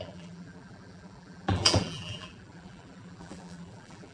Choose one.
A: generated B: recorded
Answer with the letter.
A